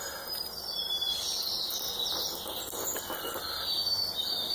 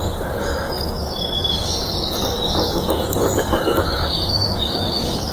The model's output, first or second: second